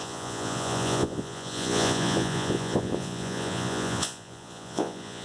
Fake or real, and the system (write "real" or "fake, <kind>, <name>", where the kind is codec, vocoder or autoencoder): fake, vocoder, Vocos